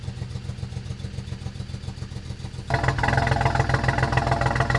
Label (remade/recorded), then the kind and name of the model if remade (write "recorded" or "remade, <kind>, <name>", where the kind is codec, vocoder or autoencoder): recorded